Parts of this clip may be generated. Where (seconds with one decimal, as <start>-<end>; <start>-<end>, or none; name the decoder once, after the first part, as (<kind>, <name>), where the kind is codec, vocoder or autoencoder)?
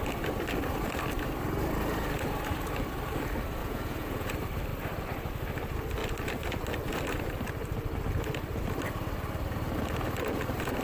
3.6-4.3 (vocoder, Vocos)